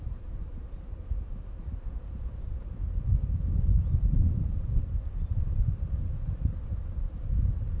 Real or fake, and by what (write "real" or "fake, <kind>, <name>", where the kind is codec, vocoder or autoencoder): fake, vocoder, BigVGAN v2